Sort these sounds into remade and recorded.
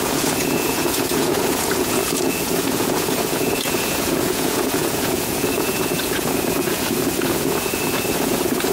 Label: remade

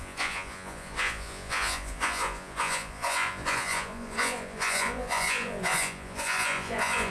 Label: remade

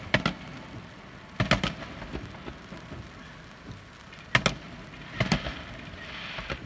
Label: recorded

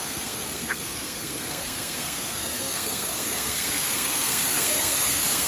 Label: remade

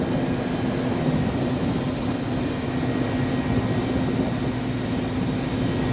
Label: recorded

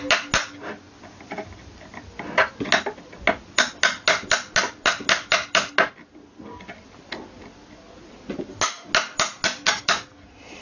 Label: recorded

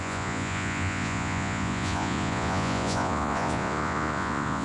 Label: remade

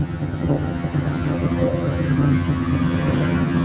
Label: remade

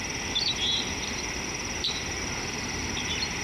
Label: recorded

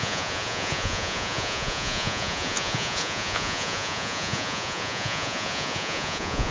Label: remade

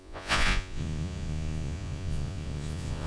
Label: remade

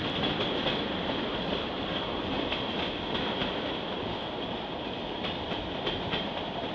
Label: recorded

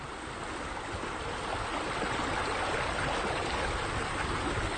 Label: recorded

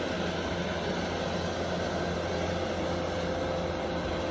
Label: recorded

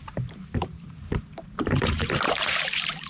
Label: remade